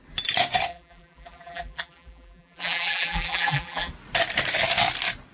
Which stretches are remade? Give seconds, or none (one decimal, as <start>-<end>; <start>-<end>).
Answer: 0.7-3.9